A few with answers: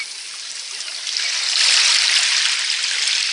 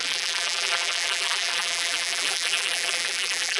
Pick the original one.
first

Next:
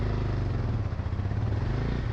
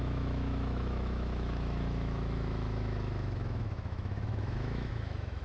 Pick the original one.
first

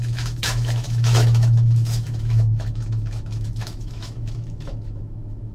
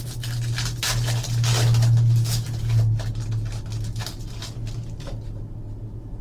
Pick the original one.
second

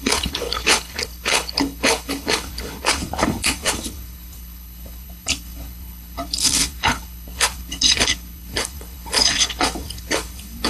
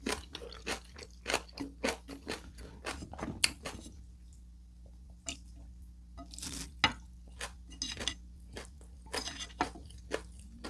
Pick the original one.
second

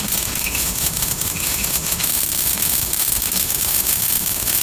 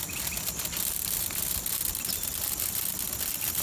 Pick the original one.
second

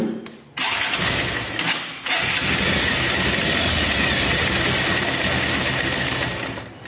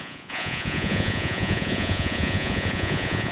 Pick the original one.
first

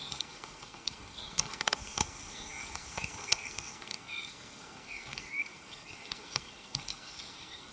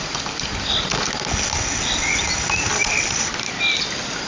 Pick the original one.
second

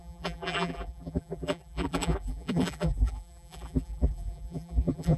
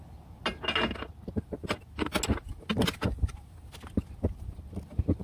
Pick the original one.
second